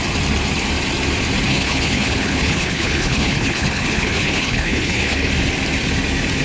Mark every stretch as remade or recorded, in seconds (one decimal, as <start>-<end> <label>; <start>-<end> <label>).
0.0-1.5 recorded; 1.5-5.3 remade; 5.3-6.4 recorded